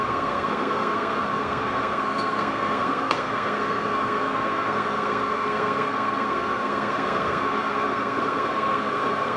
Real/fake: fake